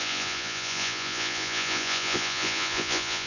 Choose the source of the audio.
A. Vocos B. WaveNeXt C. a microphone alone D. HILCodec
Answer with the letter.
A